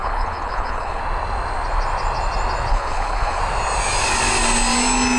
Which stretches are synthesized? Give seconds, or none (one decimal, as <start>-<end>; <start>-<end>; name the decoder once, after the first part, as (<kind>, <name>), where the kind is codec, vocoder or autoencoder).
0.0-1.0 (codec, HILCodec); 2.7-3.4